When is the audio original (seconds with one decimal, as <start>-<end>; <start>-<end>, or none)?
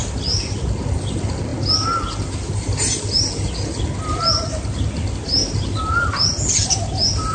0.0-7.3